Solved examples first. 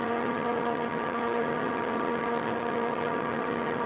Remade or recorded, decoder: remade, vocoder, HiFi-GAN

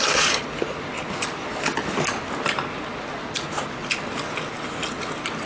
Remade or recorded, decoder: recorded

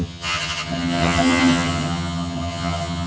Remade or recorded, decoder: remade, vocoder, HiFi-GAN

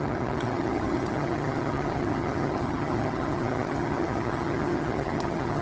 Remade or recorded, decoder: remade, vocoder, HiFi-GAN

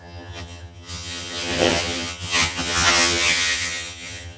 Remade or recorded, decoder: remade, vocoder, HiFi-GAN